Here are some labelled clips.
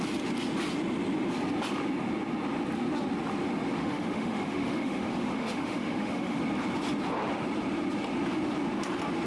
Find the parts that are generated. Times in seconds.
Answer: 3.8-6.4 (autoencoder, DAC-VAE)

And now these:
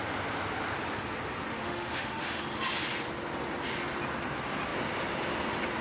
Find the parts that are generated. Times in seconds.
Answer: 1.5-2.4 (autoencoder, DAC-VAE)

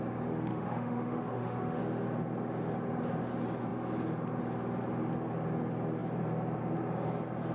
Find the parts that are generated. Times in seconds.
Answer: 0.5-1.8 (autoencoder, DAC-VAE)

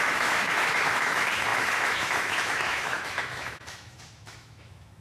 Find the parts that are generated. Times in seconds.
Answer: 0.0-5.0 (autoencoder, DAC-VAE)

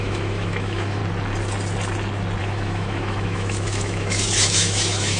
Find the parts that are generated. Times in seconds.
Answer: 0.0-1.0 (autoencoder, DAC-VAE); 2.4-5.2

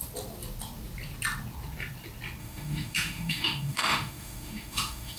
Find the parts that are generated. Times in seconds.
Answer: 2.4-5.2 (autoencoder, DAC-VAE)

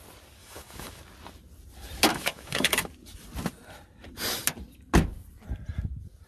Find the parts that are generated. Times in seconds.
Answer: 0.4-1.0 (autoencoder, DAC-VAE); 2.1-2.9